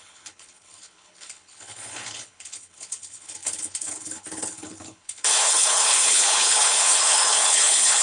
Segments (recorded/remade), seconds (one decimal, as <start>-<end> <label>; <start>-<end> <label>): 0.0-8.0 remade